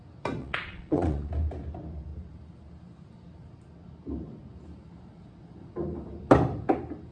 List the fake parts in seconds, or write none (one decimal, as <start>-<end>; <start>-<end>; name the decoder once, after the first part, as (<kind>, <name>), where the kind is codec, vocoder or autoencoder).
0.4-1.3 (vocoder, Vocos)